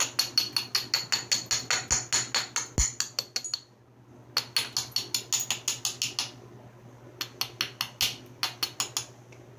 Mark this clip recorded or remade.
recorded